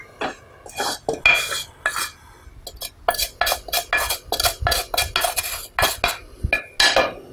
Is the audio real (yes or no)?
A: yes